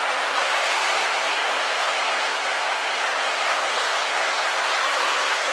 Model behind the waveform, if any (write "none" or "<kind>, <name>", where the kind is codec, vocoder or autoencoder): codec, SNAC